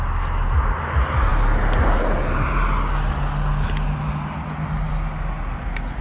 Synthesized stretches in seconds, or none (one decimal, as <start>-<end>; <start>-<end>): none